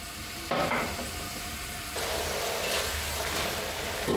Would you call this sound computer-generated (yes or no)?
no